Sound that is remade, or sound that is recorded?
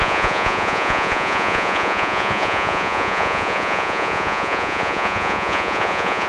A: remade